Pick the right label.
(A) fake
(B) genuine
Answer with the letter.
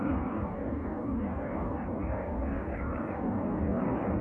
A